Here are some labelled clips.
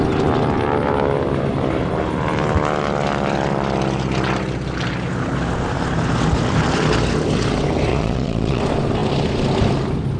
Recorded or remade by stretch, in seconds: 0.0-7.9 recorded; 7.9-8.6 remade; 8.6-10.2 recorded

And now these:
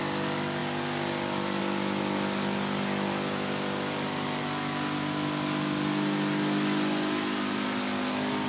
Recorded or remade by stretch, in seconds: 0.0-8.5 recorded

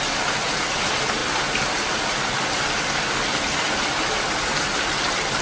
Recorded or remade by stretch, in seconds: 0.0-5.4 recorded

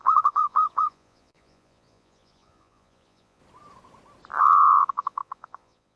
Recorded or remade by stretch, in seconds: 0.0-3.4 remade; 3.4-4.4 recorded; 4.4-6.0 remade

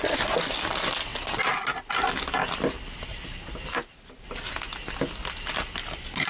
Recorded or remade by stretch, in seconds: 0.0-6.3 recorded

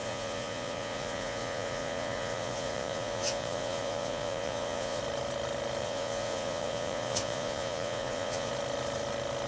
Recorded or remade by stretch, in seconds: 0.0-5.0 remade; 5.0-5.8 recorded; 5.8-8.5 remade; 8.5-9.5 recorded

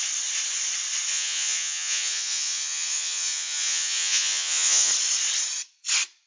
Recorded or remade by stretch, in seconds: 0.0-1.1 recorded; 1.1-4.9 remade; 4.9-6.3 recorded